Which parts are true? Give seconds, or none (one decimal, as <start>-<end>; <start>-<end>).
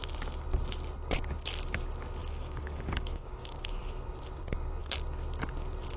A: 0.0-2.2; 3.8-6.0